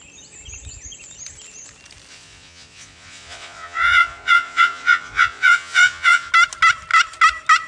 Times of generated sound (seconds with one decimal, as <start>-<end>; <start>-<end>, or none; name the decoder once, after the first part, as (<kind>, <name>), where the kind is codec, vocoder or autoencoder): 2.1-6.3 (vocoder, Vocos)